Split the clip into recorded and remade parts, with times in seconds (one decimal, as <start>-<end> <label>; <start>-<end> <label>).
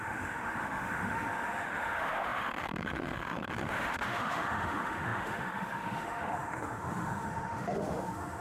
0.0-8.4 remade